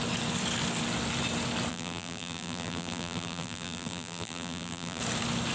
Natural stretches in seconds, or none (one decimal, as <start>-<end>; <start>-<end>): 0.0-1.7; 5.0-5.5